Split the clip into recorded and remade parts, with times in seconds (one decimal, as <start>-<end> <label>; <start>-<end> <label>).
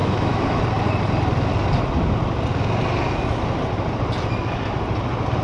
0.0-0.6 remade; 0.6-5.4 recorded